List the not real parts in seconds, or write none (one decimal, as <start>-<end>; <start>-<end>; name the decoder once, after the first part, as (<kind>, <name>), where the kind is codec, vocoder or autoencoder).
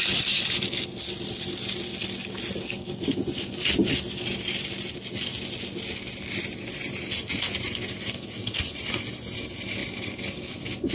none